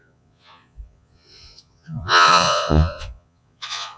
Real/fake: fake